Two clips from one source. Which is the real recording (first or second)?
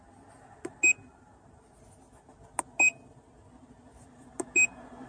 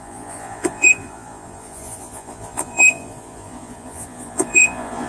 first